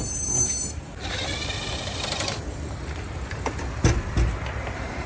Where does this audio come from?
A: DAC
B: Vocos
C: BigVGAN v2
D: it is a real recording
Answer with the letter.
C